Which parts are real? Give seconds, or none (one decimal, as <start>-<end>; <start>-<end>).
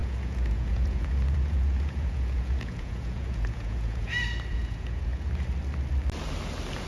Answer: 4.1-4.5; 5.3-6.9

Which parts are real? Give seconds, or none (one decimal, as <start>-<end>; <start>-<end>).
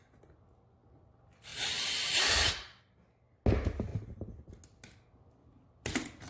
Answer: 0.0-6.3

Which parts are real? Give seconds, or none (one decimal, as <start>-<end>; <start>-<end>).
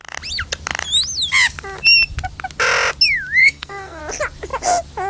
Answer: 0.0-3.4; 4.0-5.1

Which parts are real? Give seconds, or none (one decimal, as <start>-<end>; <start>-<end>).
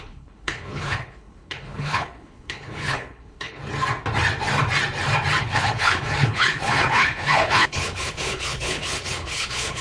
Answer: 3.6-5.4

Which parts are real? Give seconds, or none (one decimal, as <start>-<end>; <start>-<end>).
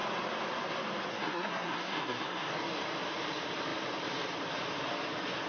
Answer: 0.0-1.1; 2.5-5.5